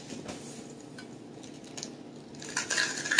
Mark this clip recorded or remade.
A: recorded